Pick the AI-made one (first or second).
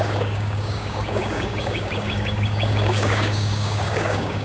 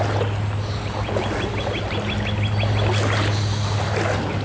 first